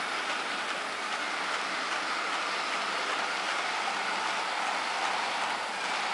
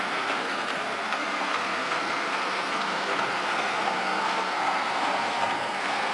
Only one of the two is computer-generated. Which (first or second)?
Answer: second